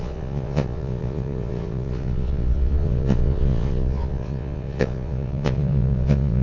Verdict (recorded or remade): remade